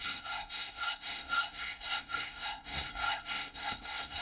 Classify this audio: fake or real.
fake